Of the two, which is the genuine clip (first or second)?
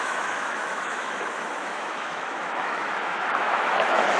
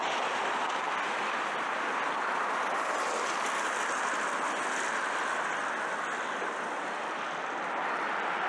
second